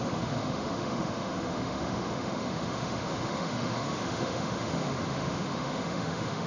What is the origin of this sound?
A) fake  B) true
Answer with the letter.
A